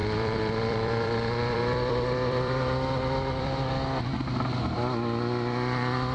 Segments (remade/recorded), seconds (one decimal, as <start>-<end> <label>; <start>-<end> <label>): 0.0-3.7 remade; 3.7-6.1 recorded